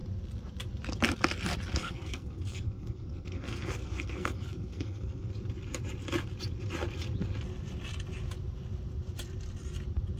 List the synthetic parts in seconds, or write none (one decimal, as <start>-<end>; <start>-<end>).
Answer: 1.8-5.3